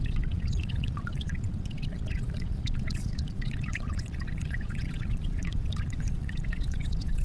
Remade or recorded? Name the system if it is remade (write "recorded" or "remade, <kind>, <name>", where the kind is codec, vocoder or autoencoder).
remade, vocoder, Vocos